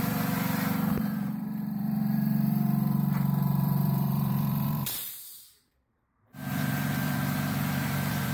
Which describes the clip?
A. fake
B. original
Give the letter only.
A